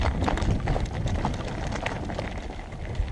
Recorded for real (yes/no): yes